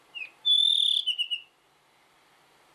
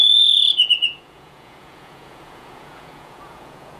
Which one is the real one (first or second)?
first